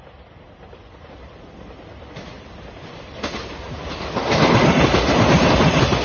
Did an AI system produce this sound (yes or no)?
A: no